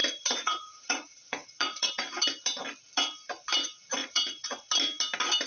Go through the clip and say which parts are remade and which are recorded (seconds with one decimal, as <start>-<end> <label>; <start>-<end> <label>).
0.0-1.9 remade; 1.9-4.0 recorded; 4.0-4.7 remade; 4.7-5.5 recorded

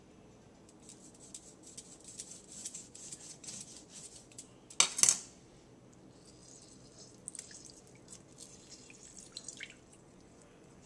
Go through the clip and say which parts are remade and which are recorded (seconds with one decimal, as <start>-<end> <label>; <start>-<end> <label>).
0.0-2.6 recorded; 2.6-4.4 remade; 4.4-9.9 recorded; 9.9-10.9 remade

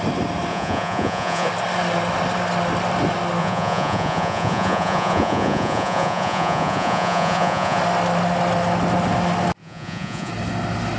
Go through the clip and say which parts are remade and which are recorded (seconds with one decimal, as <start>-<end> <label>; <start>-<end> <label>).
0.0-0.5 recorded; 0.5-1.5 remade; 1.5-3.4 recorded; 3.4-7.8 remade; 7.8-9.6 recorded; 9.6-10.3 remade; 10.3-11.0 recorded

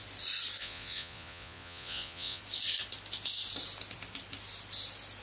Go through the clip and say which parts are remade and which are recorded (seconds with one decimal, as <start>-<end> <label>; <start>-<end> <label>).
0.0-0.6 recorded; 0.6-2.4 remade; 2.4-5.2 recorded

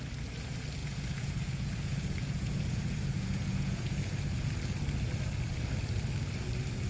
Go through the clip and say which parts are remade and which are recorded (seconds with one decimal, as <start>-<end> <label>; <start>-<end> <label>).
0.0-0.8 recorded; 0.8-4.0 remade; 4.0-6.9 recorded